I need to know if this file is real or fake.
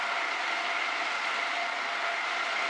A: real